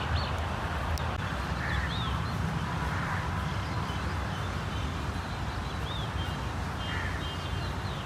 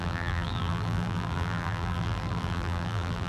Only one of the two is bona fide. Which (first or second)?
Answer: first